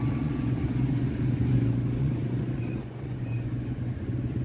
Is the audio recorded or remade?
remade